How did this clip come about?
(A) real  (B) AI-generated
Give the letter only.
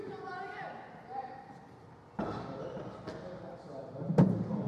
A